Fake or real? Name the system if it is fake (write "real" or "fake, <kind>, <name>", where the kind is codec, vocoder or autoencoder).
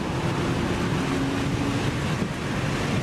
real